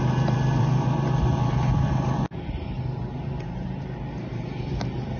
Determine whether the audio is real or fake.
fake